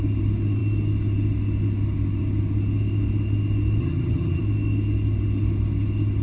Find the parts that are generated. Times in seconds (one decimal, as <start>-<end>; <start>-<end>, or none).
3.8-4.4